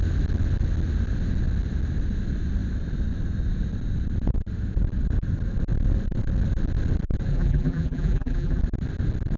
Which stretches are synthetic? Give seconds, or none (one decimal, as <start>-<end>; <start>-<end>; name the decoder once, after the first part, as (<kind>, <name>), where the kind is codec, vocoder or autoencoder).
7.3-8.6 (vocoder, BigVGAN v2)